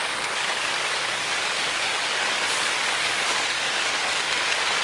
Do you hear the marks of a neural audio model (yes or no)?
yes